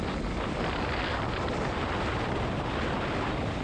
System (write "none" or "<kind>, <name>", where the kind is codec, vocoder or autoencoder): none